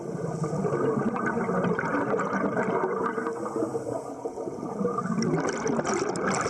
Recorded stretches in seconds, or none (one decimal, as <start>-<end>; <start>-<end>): 0.0-6.5